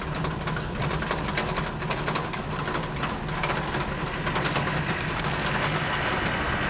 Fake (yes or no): no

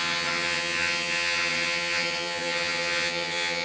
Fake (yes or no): yes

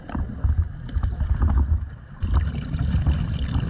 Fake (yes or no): no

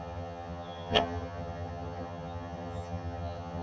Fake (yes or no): yes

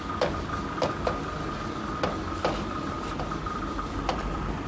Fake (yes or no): no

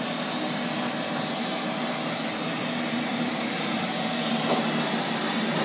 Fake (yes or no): no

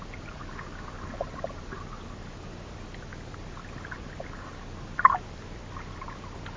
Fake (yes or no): no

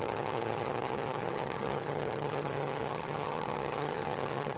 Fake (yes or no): yes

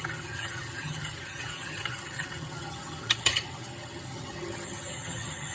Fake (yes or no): yes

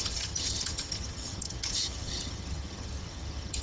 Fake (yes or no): yes